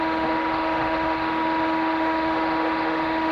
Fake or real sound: fake